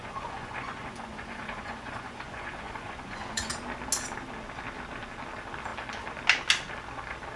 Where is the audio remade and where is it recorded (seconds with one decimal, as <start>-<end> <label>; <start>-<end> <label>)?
0.0-3.5 remade; 3.5-7.4 recorded